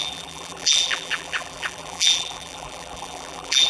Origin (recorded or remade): remade